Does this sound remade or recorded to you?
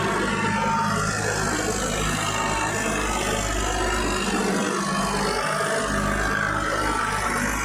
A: recorded